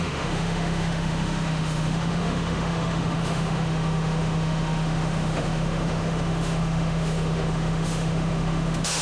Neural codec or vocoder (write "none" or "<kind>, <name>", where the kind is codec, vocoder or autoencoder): autoencoder, DAC-VAE